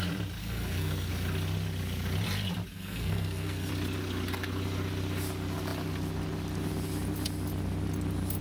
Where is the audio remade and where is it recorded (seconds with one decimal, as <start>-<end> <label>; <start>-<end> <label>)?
0.0-0.4 recorded; 0.4-1.1 remade; 1.1-2.7 recorded; 2.7-3.7 remade; 3.7-8.4 recorded